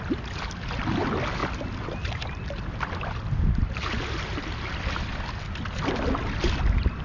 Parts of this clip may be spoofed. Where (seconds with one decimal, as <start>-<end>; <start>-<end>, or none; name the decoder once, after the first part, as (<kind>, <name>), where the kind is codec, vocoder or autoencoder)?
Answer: none